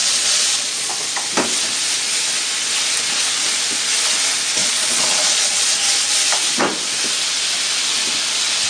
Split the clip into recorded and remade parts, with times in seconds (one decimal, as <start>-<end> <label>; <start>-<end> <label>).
0.0-0.9 remade; 0.9-4.6 recorded; 4.6-5.7 remade; 5.7-8.7 recorded